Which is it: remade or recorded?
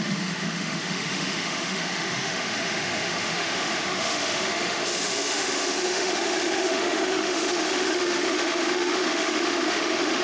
remade